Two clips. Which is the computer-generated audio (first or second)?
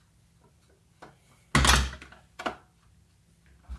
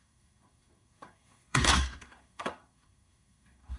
second